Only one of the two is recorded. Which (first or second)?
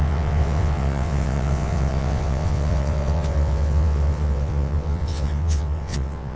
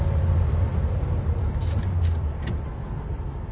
second